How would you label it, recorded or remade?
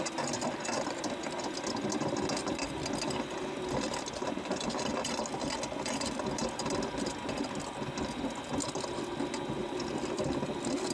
recorded